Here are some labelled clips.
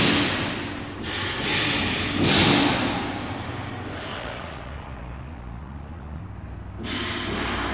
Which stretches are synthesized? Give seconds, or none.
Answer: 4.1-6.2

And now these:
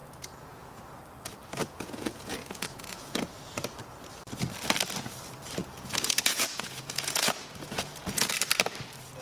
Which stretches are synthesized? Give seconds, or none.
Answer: 0.0-0.8; 1.6-3.3; 5.6-8.3

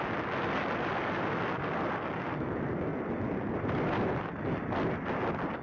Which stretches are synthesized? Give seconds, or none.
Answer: none

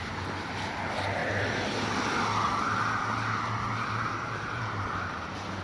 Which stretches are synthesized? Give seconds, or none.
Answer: 4.0-5.1

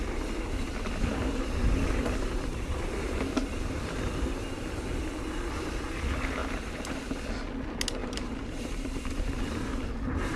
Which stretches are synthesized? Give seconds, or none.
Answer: 6.4-7.0; 8.0-9.9